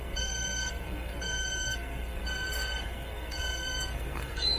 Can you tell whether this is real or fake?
fake